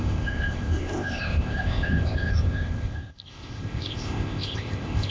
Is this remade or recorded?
remade